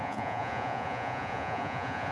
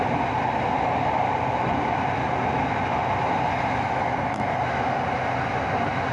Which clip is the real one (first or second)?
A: second